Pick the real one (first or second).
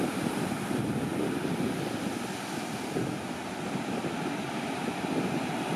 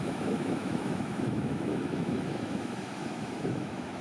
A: first